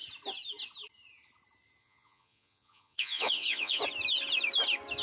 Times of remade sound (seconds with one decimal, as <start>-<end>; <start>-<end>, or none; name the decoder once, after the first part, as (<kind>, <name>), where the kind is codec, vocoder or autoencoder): 1.8-3.8 (vocoder, Vocos)